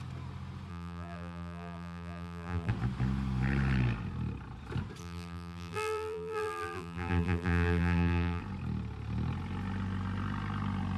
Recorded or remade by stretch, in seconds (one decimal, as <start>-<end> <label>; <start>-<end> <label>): 0.0-0.7 recorded; 0.7-2.7 remade; 2.7-5.0 recorded; 5.0-8.4 remade; 8.4-11.0 recorded